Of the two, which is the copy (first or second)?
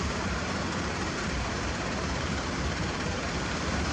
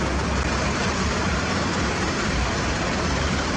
first